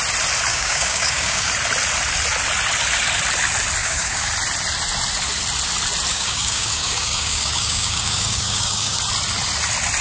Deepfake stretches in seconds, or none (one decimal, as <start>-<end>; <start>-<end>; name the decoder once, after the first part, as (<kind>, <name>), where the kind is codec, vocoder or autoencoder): 0.5-1.5 (codec, DAC); 3.8-4.3; 6.1-9.0